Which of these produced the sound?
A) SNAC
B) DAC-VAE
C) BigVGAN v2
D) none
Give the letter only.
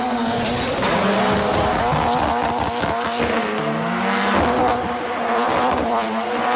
D